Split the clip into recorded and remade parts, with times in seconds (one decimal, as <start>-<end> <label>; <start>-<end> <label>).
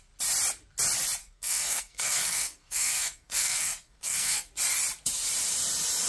0.0-1.2 recorded; 1.2-4.5 remade; 4.5-6.1 recorded